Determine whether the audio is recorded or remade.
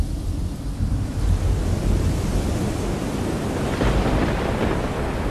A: recorded